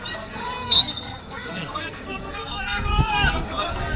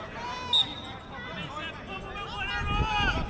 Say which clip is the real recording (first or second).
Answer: second